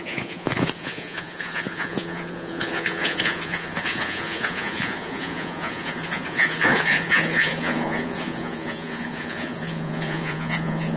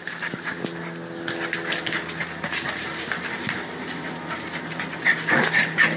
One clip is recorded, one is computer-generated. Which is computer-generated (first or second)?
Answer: first